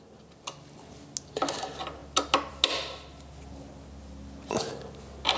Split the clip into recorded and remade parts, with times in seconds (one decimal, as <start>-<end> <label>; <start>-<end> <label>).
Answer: 0.0-5.4 recorded